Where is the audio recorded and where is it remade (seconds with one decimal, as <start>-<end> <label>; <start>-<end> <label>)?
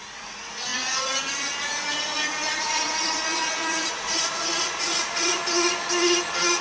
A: 0.0-5.4 remade; 5.4-6.6 recorded